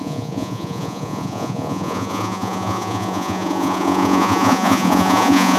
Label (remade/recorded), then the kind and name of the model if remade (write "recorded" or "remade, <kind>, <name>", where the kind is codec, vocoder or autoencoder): remade, vocoder, Vocos